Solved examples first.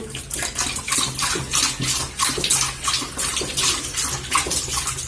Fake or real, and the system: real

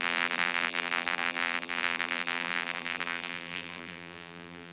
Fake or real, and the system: fake, vocoder, BigVGAN v2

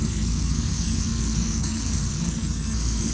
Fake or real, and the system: fake, codec, SNAC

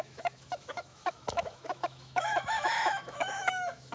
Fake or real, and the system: fake, autoencoder, DAC-VAE